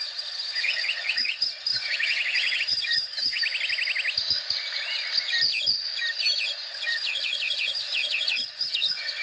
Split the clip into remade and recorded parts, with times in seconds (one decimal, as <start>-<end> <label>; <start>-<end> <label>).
0.0-3.4 remade; 3.4-6.7 recorded; 6.7-9.2 remade